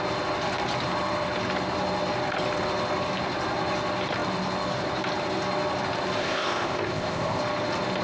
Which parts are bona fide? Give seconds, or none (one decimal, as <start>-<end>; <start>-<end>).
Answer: 0.0-6.2; 7.4-8.0